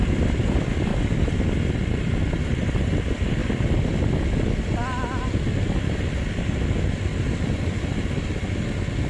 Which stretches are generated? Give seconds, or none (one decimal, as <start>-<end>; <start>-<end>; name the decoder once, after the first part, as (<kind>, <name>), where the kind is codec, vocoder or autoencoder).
none